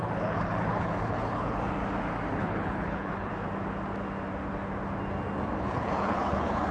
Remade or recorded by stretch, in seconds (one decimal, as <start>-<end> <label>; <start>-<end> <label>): 0.0-1.8 remade; 1.8-2.3 recorded; 2.3-3.3 remade; 3.3-5.6 recorded; 5.6-6.7 remade